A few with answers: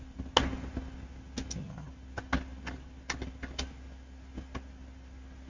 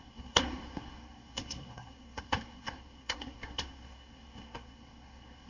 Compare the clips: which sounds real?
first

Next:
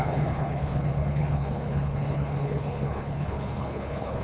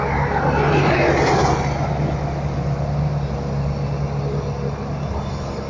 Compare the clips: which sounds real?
second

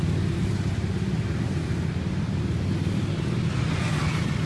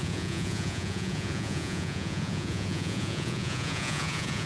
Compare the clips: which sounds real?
first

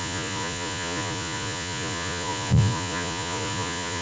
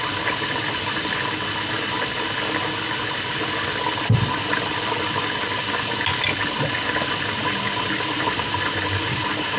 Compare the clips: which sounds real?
second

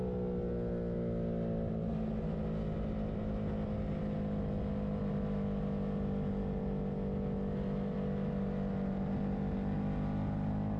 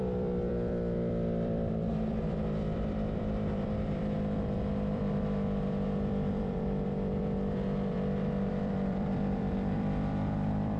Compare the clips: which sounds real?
first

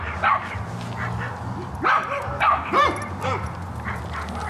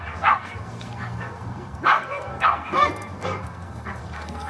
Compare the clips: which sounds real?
first